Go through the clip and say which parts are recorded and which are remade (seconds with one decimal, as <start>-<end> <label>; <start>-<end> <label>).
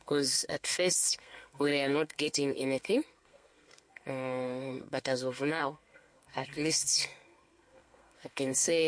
0.0-8.9 remade